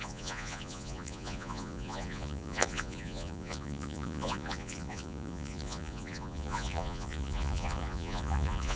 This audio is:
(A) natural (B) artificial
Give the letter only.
B